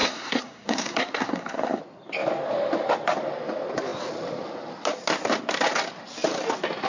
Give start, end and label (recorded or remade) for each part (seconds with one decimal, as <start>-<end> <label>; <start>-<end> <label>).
0.0-1.8 remade; 1.8-6.9 recorded